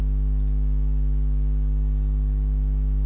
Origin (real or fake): real